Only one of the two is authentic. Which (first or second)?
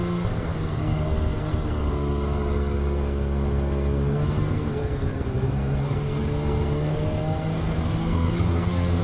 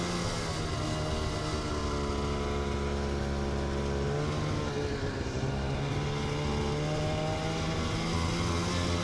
second